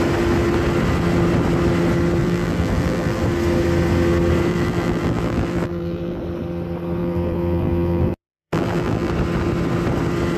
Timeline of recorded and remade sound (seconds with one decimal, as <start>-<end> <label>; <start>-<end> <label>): 0.0-2.2 recorded; 2.2-3.2 remade; 3.2-4.5 recorded; 4.5-6.2 remade; 6.2-7.0 recorded; 7.0-9.1 remade; 9.1-10.4 recorded

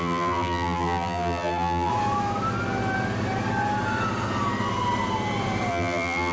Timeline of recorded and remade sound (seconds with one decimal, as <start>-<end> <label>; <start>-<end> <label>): 0.0-1.9 remade; 1.9-5.7 recorded; 5.7-6.3 remade